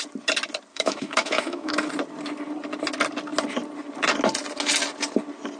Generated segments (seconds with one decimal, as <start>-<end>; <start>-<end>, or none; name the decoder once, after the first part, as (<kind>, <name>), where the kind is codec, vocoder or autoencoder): 0.7-1.9 (autoencoder, DAC-VAE)